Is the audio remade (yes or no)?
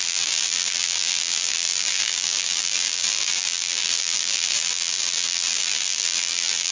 yes